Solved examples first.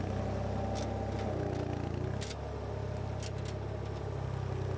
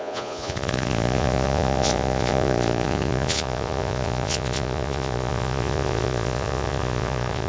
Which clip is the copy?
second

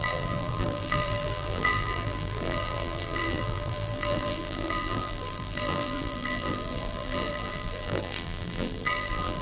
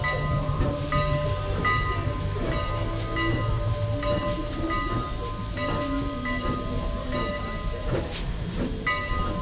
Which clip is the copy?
first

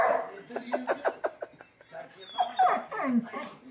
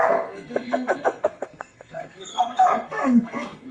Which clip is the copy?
second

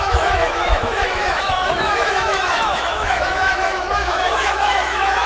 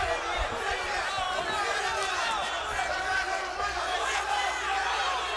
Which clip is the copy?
first